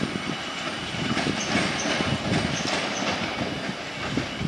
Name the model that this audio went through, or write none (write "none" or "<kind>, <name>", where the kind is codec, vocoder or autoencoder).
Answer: none